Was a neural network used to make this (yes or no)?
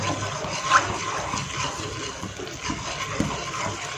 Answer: no